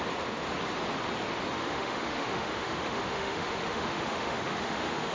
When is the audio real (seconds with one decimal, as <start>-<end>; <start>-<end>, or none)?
0.0-1.6